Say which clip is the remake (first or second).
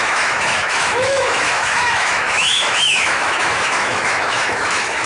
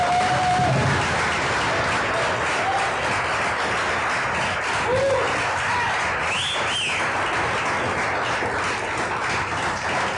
first